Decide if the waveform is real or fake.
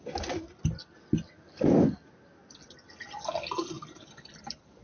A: real